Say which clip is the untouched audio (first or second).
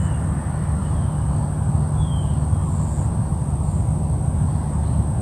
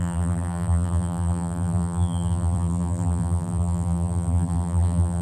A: first